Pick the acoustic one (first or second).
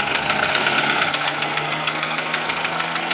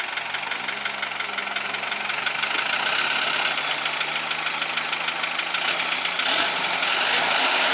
second